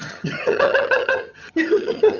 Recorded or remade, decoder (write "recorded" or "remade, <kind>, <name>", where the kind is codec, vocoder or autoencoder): remade, vocoder, HiFi-GAN